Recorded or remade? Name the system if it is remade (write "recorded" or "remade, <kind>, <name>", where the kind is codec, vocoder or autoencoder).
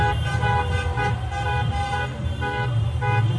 recorded